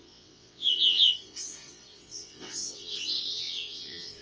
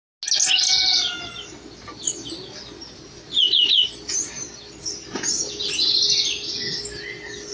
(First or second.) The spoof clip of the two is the first